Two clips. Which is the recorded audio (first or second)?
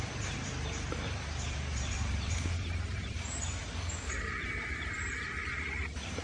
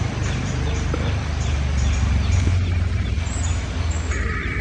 second